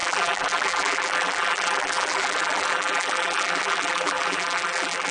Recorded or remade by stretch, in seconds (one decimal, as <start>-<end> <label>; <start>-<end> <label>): 0.0-5.1 remade